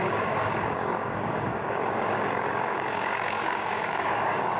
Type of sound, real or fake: fake